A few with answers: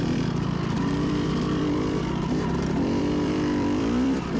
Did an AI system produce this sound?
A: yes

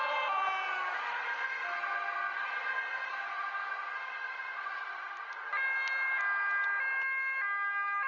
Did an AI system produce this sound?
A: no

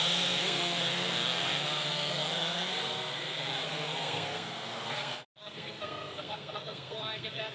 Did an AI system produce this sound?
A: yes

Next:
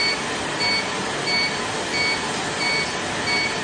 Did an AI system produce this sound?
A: no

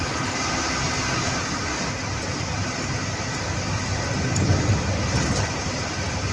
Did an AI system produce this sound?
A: no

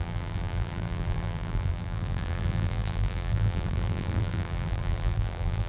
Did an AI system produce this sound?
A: yes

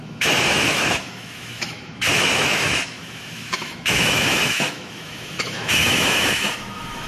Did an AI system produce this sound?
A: yes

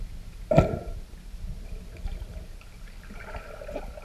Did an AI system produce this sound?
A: no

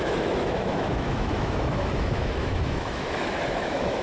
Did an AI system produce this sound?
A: yes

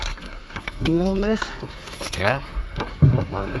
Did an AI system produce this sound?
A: yes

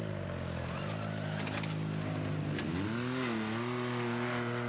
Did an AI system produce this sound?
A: no